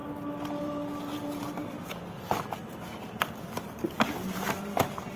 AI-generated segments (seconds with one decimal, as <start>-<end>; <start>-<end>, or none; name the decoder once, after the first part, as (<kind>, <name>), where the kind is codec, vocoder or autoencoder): none